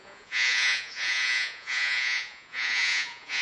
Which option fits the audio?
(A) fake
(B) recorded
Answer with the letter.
A